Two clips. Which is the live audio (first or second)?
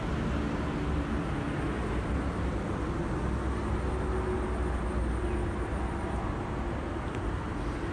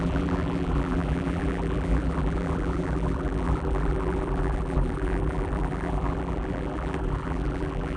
first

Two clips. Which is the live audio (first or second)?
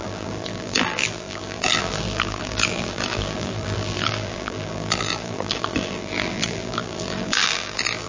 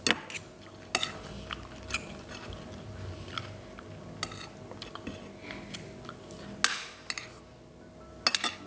second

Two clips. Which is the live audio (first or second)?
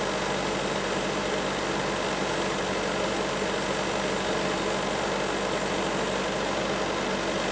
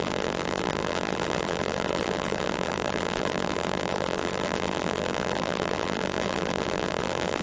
first